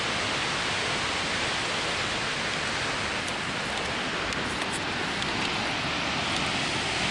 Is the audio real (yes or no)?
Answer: yes